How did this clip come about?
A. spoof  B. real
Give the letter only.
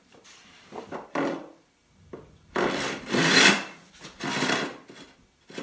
A